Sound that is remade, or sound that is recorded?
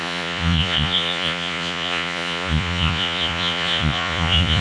remade